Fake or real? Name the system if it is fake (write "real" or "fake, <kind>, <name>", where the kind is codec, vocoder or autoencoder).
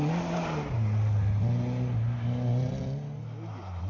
real